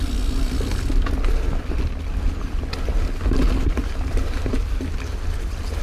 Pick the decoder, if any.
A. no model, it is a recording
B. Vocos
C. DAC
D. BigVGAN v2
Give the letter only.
A